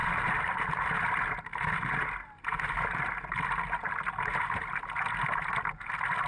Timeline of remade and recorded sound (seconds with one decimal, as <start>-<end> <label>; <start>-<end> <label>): 0.0-6.3 recorded

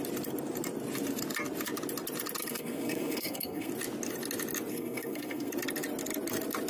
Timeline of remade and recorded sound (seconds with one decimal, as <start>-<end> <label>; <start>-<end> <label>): 0.0-2.4 recorded; 2.4-3.7 remade; 3.7-4.7 recorded; 4.7-5.5 remade; 5.5-6.7 recorded

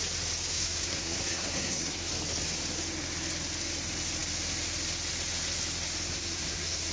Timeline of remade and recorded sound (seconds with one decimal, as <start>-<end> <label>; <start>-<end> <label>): 0.0-0.5 recorded; 0.5-2.1 remade; 2.1-6.1 recorded; 6.1-6.9 remade

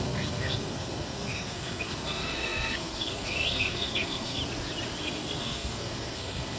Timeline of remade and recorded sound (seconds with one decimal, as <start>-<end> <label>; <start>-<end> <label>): 0.0-4.4 remade; 4.4-5.0 recorded; 5.0-6.6 remade

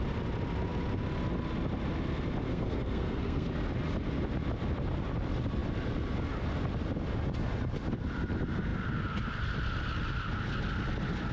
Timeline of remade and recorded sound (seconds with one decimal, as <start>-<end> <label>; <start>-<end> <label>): 0.0-2.5 recorded; 2.5-3.5 remade; 3.5-11.3 recorded

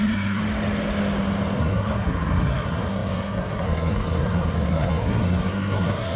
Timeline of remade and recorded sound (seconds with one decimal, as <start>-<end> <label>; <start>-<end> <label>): 0.0-0.4 remade; 0.4-1.6 recorded; 1.6-6.2 remade